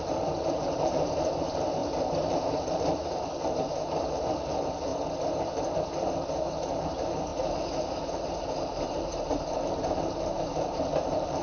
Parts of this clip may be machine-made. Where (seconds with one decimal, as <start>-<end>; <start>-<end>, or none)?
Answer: 0.0-4.9; 6.5-11.4

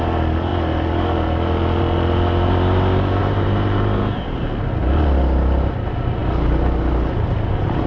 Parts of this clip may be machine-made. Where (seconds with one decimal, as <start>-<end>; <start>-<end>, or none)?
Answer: 3.2-4.4